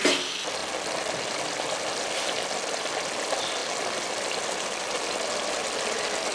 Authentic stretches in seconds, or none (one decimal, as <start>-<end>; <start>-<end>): 0.0-6.3